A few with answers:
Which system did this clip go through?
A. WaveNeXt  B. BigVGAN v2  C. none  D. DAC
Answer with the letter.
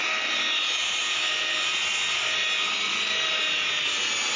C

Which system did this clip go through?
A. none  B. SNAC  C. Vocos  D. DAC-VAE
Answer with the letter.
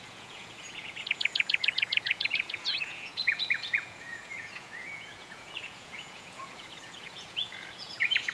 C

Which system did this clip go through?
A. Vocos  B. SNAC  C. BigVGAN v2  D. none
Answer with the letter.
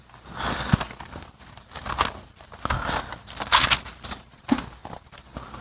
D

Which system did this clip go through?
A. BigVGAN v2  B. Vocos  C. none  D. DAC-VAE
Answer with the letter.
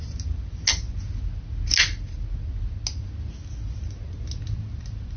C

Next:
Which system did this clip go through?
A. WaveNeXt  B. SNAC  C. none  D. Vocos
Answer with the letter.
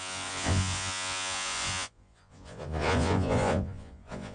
D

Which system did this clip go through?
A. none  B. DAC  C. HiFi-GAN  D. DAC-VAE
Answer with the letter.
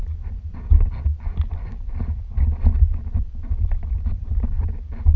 A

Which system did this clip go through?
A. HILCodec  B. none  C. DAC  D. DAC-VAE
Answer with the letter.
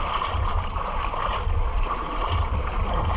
B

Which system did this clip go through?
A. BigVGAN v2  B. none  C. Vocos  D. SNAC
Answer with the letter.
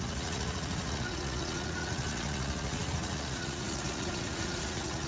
C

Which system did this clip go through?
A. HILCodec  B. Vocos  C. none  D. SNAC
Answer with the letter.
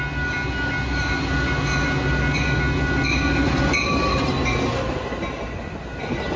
C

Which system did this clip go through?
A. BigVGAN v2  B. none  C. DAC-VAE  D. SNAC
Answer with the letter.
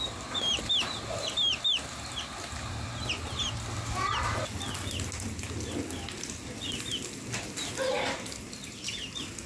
B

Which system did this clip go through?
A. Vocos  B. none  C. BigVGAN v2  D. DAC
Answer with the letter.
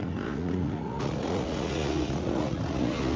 A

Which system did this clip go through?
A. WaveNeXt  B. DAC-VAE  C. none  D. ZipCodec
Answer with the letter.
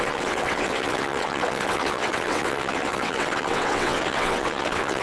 A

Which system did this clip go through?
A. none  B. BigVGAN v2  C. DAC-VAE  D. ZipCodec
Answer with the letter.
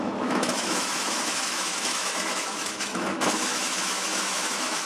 C